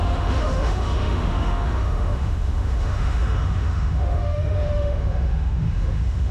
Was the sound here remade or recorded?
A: remade